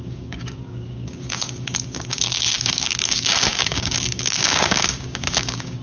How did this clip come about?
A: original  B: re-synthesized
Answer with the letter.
B